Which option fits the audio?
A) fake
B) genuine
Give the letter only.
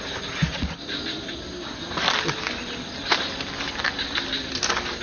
B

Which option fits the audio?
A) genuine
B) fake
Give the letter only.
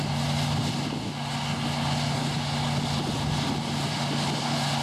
A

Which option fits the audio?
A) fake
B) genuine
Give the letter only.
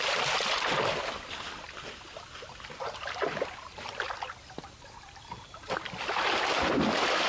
B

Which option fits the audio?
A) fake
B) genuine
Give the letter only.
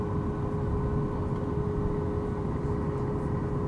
B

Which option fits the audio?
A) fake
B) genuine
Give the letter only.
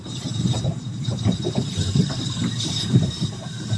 A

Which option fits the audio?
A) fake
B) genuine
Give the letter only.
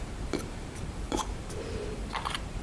A